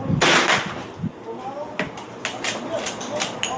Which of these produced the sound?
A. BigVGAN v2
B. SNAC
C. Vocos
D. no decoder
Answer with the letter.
D